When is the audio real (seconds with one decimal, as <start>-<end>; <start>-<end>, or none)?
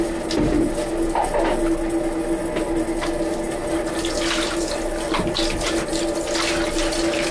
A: 0.0-7.3